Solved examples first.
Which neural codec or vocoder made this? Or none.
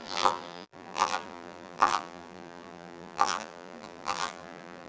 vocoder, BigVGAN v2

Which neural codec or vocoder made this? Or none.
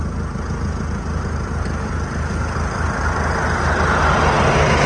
none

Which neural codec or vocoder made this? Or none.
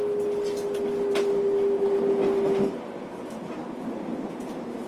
none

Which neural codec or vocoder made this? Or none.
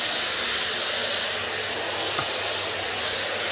none